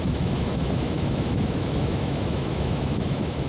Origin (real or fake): fake